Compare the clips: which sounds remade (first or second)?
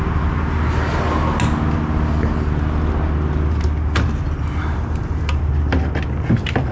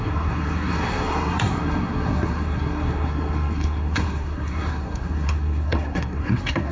second